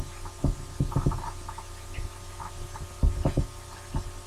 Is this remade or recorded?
recorded